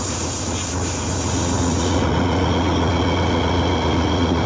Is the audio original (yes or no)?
no